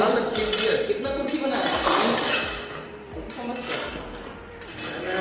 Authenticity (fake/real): real